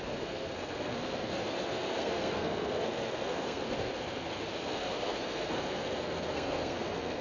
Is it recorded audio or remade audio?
remade